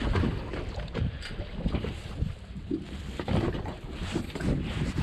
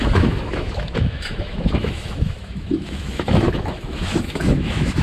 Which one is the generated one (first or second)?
second